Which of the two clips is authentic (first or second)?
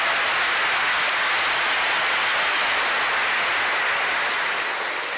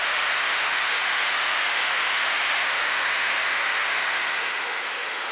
first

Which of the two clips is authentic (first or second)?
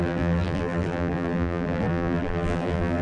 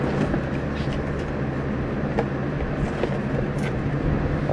second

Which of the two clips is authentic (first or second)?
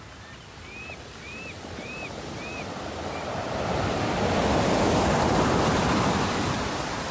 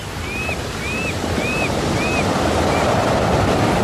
second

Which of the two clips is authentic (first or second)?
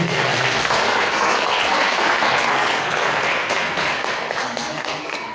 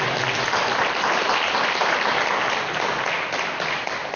second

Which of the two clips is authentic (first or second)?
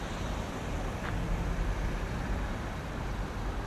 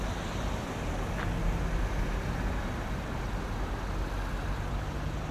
second